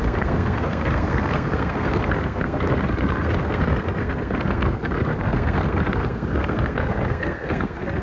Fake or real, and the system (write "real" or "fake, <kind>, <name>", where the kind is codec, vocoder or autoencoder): fake, codec, SNAC